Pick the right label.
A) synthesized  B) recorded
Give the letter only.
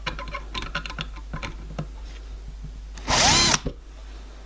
B